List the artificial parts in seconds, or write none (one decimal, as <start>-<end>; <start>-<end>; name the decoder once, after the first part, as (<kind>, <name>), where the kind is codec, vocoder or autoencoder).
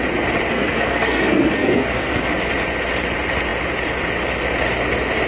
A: 0.5-2.2 (codec, SNAC)